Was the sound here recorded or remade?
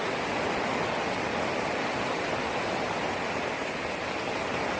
recorded